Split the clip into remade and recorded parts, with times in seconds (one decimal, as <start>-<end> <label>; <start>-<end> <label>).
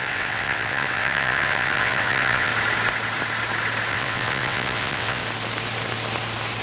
0.0-2.5 remade; 2.5-3.9 recorded; 3.9-5.2 remade; 5.2-6.6 recorded